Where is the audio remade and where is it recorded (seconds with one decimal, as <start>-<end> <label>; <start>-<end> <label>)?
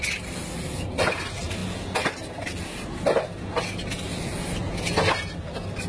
0.0-5.9 recorded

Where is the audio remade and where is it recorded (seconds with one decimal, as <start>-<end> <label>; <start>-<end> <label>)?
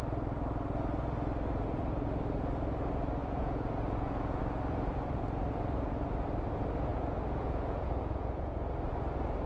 0.0-3.2 recorded; 3.2-4.4 remade; 4.4-6.9 recorded; 6.9-8.7 remade; 8.7-9.5 recorded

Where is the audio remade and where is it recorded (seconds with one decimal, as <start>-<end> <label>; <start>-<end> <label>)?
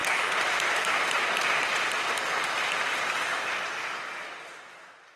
0.0-5.2 recorded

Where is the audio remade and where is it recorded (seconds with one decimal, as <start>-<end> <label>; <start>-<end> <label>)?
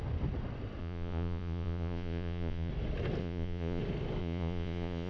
0.0-0.8 recorded; 0.8-2.7 remade; 2.7-3.2 recorded; 3.2-3.8 remade; 3.8-4.2 recorded; 4.2-5.1 remade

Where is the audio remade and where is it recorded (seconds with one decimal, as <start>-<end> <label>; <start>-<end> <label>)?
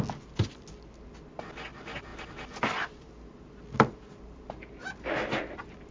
0.0-5.9 recorded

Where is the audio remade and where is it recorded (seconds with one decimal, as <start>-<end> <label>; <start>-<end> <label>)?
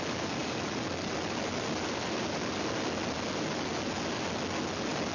0.0-5.1 recorded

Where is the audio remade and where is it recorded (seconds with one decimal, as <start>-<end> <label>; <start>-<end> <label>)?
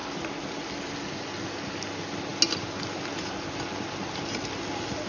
0.0-5.1 recorded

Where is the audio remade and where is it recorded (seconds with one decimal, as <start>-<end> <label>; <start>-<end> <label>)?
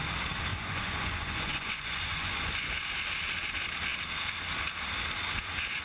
0.0-0.5 recorded; 0.5-2.7 remade; 2.7-5.8 recorded